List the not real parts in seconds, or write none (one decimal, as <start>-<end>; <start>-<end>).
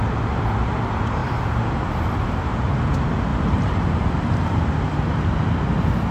1.2-2.8; 3.3-4.6